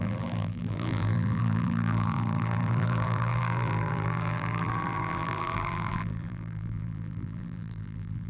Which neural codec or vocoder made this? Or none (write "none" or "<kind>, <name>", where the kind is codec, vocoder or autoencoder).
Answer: vocoder, BigVGAN v2